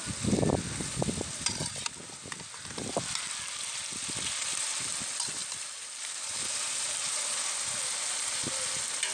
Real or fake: real